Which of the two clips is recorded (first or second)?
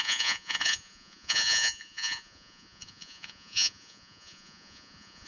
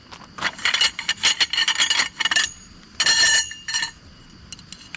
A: second